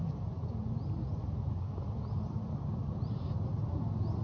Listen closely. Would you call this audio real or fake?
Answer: real